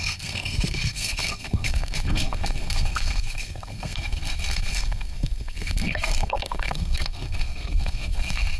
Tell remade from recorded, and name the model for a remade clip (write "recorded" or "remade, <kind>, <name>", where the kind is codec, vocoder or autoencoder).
remade, codec, SNAC